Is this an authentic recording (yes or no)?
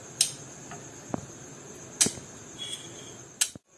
yes